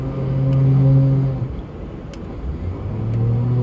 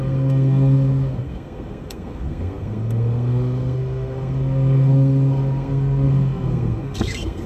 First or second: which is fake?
second